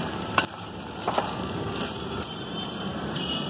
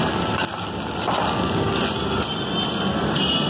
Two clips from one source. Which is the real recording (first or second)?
second